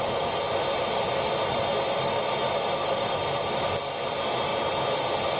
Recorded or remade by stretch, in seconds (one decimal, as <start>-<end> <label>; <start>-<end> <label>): 0.0-5.4 recorded